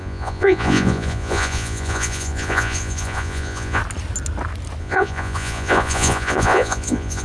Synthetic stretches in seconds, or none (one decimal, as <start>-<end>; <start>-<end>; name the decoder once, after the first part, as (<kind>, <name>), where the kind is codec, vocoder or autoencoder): 0.0-3.8 (vocoder, Vocos); 4.8-7.2